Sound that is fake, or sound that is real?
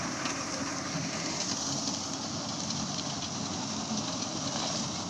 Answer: real